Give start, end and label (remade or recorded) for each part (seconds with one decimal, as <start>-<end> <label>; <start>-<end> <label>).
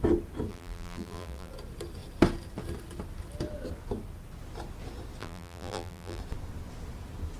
0.0-0.5 recorded; 0.5-1.5 remade; 1.5-5.2 recorded; 5.2-6.2 remade; 6.2-7.4 recorded